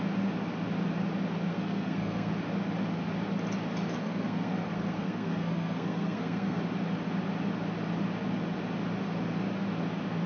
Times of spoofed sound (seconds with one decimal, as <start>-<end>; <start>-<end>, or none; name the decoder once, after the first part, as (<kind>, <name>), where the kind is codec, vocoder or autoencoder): 1.5-2.3 (codec, SNAC); 4.0-6.6